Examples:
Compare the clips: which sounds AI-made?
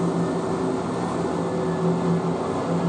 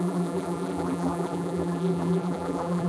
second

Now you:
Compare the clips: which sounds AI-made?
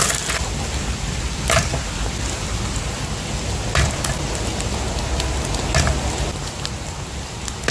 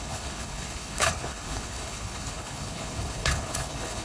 second